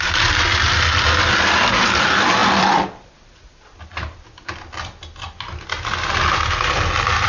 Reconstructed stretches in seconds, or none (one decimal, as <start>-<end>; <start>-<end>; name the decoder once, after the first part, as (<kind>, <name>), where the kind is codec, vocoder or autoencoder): none